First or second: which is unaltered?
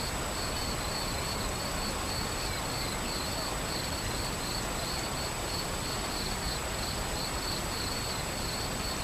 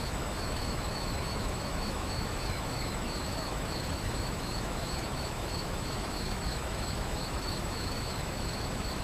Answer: first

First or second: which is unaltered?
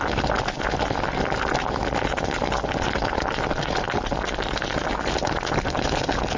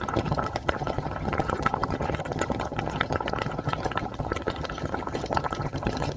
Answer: first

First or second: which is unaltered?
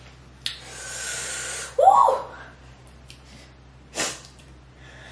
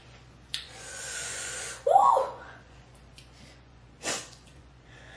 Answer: first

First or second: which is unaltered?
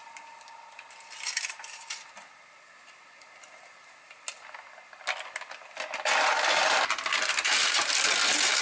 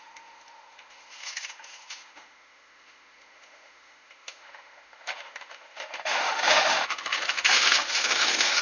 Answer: first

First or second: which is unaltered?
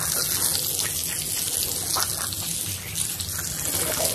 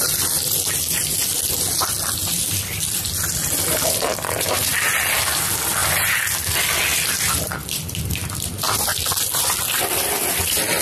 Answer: first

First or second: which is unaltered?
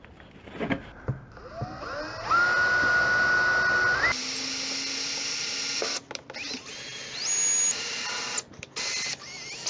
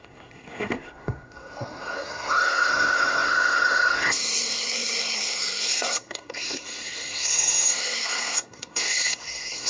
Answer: first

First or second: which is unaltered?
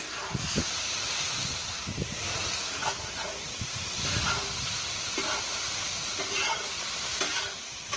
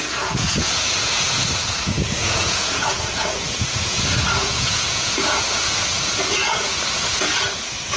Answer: first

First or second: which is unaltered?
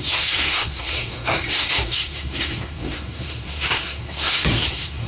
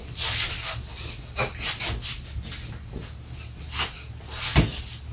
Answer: second